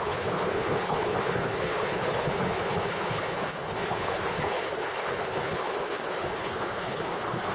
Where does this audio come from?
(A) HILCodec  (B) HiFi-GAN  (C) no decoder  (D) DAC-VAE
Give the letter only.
A